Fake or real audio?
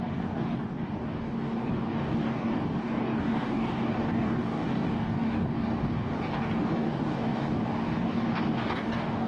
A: fake